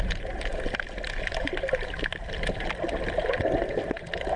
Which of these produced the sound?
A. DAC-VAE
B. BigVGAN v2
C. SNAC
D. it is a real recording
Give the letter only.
D